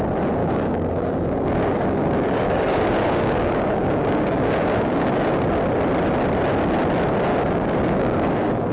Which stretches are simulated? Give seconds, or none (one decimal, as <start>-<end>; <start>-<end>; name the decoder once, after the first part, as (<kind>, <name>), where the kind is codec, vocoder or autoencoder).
0.4-5.4 (codec, DAC); 7.3-8.7